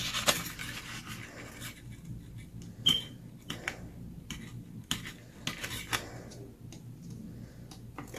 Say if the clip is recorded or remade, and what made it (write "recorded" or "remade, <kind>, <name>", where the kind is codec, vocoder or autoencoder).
recorded